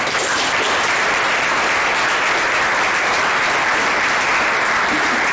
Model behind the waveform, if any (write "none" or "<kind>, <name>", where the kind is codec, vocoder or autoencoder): none